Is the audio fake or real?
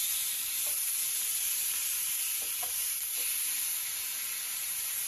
fake